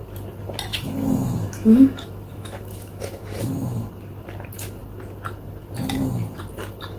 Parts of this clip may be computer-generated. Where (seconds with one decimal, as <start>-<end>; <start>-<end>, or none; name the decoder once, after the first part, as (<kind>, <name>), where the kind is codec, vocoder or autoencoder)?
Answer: 0.7-3.9 (autoencoder, DAC-VAE)